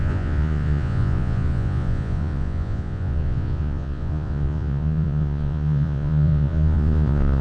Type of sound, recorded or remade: remade